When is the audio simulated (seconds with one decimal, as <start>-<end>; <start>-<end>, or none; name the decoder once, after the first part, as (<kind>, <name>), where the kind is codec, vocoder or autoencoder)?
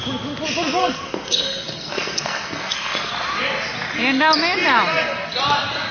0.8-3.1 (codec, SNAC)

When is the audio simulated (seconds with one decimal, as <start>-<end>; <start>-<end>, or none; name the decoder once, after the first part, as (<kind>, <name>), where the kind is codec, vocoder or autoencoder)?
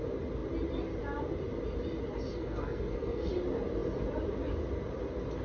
2.3-3.3 (codec, SNAC)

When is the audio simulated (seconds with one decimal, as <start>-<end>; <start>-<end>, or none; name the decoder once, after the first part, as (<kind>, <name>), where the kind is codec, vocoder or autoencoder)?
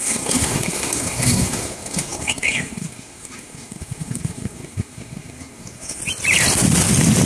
0.0-6.0 (codec, SNAC)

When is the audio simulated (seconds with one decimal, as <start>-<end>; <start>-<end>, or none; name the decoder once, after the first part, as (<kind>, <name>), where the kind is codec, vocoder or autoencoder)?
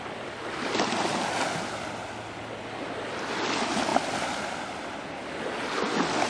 none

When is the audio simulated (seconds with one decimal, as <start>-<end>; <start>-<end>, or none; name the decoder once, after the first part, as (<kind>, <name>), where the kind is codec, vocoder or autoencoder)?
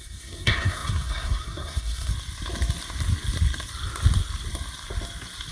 0.0-2.1 (codec, SNAC)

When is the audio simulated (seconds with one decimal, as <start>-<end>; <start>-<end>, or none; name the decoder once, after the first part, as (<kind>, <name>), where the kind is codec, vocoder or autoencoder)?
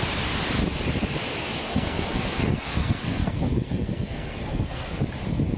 1.6-5.0 (codec, SNAC)